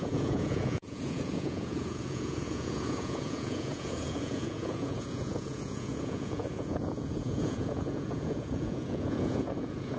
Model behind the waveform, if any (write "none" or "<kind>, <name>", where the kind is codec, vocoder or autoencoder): vocoder, Vocos